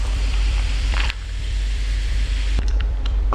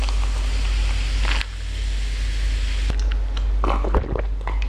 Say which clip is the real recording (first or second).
second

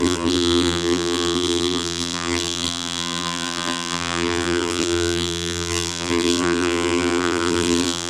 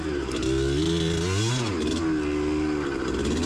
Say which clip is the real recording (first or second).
second